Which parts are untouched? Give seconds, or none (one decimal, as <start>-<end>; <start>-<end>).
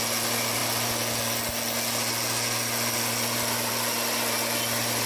0.0-5.1